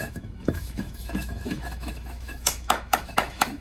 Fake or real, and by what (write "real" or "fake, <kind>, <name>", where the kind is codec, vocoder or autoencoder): fake, autoencoder, DAC-VAE